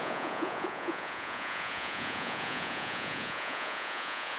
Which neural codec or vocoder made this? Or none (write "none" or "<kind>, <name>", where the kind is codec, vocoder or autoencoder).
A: vocoder, Vocos